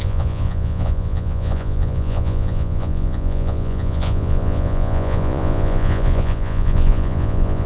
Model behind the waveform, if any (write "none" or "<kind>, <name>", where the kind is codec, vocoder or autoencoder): vocoder, Vocos